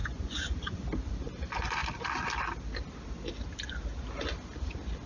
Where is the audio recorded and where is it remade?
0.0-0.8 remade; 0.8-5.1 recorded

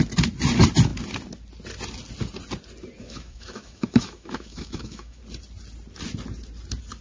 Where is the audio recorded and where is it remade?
0.0-3.0 recorded; 3.0-5.2 remade; 5.2-7.0 recorded